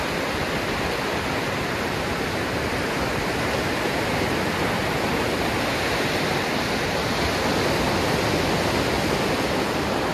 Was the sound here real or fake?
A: real